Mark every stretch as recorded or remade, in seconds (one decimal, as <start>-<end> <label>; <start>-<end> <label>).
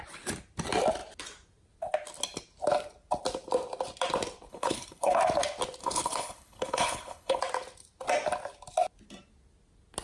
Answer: 0.0-4.5 recorded; 4.5-5.2 remade; 5.2-5.8 recorded; 5.8-7.4 remade; 7.4-10.0 recorded